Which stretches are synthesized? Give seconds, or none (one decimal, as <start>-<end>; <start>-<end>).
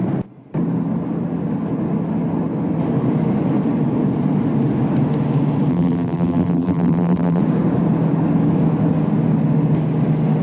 5.7-7.4